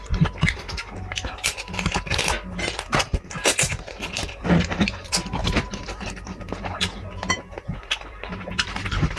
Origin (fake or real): fake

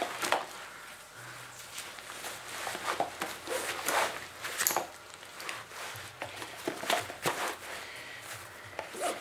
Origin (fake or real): real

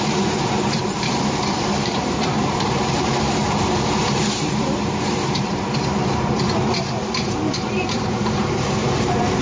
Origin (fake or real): fake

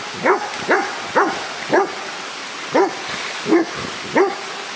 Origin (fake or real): real